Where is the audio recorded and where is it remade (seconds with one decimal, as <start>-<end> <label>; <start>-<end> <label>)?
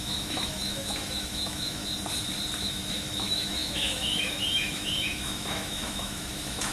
0.0-1.8 remade; 1.8-2.6 recorded; 2.6-6.7 remade